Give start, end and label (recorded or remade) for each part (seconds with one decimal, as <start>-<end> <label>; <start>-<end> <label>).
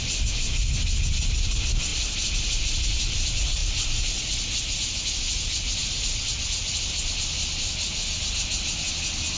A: 0.0-9.4 recorded